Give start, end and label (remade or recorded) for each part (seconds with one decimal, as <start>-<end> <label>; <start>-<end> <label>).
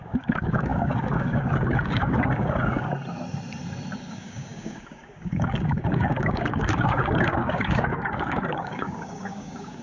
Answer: 0.0-2.9 remade; 2.9-4.1 recorded; 4.1-9.8 remade